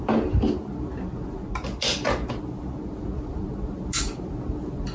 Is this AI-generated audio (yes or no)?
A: no